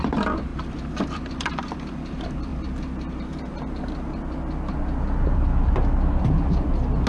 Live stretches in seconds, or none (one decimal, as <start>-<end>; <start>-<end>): 2.5-7.1